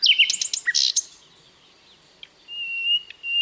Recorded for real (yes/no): yes